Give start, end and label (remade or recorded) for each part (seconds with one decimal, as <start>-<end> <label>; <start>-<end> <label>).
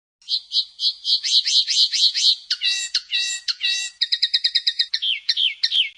0.0-1.8 recorded; 1.8-5.4 remade; 5.4-6.0 recorded